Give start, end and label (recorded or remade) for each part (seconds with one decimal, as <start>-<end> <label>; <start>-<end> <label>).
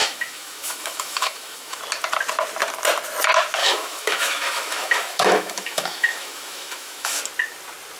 0.0-1.8 remade; 1.8-3.6 recorded; 3.6-7.2 remade; 7.2-8.0 recorded